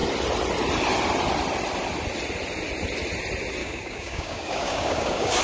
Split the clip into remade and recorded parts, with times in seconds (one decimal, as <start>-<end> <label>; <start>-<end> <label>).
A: 0.0-3.6 recorded; 3.6-5.4 remade